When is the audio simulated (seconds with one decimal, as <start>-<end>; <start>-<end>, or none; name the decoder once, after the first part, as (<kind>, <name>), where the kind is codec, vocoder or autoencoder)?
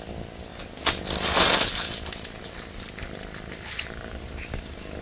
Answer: none